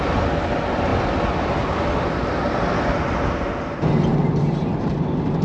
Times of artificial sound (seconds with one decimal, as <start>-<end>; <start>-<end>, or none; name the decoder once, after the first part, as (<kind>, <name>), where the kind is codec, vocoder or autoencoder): none